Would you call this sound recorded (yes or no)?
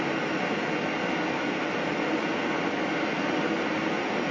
yes